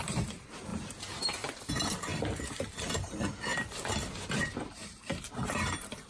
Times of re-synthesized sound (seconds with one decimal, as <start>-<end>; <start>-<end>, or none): 0.0-2.1; 2.8-3.5; 4.3-4.8; 5.3-6.1